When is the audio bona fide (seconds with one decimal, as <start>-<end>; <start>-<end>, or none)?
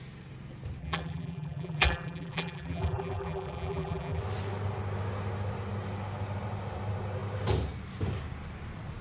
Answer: 0.0-0.8; 4.2-9.0